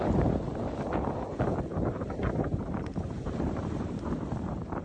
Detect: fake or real fake